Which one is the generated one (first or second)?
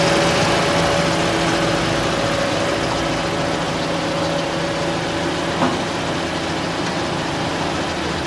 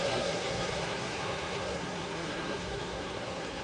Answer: second